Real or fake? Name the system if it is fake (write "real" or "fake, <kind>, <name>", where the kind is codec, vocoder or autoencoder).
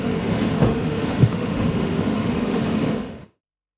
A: fake, autoencoder, DAC-VAE